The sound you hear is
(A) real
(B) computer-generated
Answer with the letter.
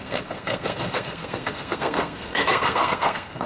B